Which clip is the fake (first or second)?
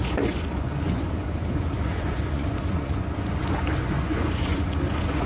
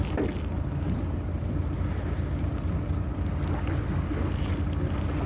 first